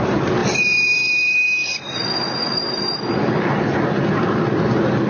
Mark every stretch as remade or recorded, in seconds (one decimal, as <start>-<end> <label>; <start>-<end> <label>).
0.0-0.4 recorded; 0.4-3.0 remade; 3.0-5.1 recorded